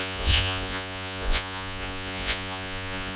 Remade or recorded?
remade